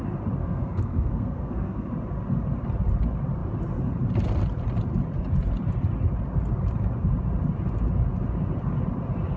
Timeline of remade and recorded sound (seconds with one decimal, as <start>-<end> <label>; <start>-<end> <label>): 0.0-0.4 recorded; 0.4-1.9 remade; 1.9-9.4 recorded